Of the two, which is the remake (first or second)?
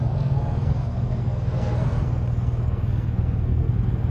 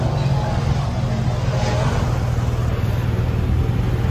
first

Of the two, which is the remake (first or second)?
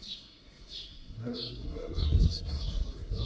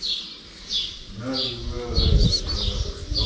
first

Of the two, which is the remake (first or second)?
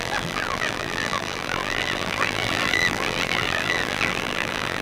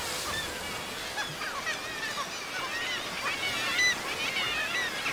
first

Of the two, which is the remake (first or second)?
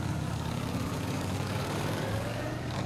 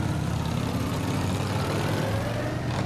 first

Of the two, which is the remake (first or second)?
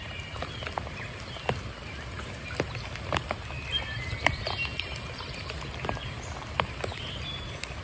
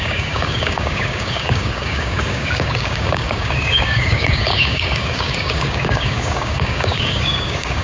second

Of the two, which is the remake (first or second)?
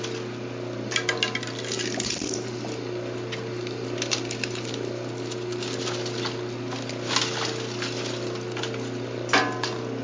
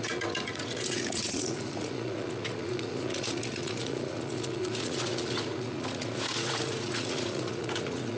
second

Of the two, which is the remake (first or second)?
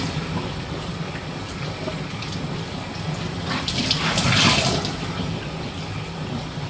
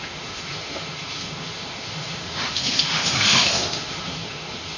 second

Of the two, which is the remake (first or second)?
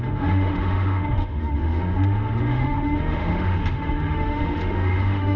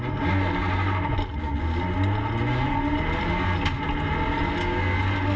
first